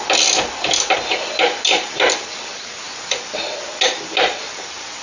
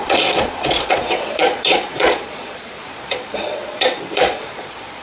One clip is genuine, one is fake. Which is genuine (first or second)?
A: first